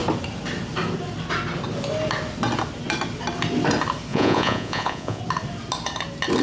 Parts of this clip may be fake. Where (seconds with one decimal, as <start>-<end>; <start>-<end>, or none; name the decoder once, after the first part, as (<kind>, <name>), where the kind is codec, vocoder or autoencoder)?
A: 4.1-5.2 (vocoder, Vocos)